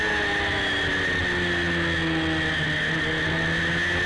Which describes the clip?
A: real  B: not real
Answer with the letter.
A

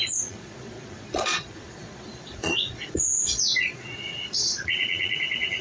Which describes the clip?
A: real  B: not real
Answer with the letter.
B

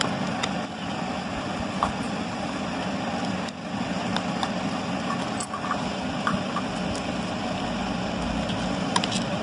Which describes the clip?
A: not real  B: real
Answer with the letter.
B